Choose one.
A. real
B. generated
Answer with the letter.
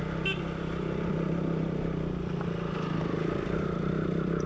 A